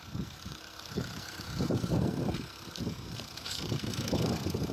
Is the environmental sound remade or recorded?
remade